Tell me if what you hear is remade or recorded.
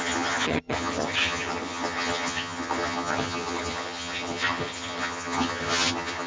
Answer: remade